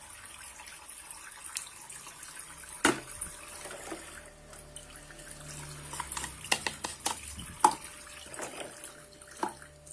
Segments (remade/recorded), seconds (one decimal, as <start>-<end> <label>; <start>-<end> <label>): 0.0-9.9 recorded